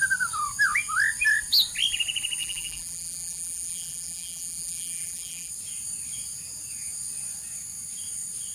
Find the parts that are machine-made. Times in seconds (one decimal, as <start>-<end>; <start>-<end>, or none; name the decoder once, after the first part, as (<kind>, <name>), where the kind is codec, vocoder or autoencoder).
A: 2.4-5.5 (vocoder, BigVGAN v2)